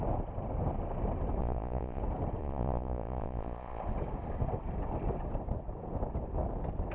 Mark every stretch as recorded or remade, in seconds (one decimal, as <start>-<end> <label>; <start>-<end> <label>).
0.0-1.4 recorded; 1.4-2.0 remade; 2.0-2.4 recorded; 2.4-3.8 remade; 3.8-6.9 recorded